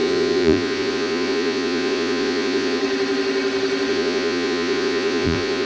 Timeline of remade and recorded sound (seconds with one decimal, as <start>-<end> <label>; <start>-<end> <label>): 0.0-2.8 remade; 2.8-3.9 recorded; 3.9-5.6 remade